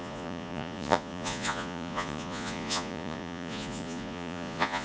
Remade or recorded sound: remade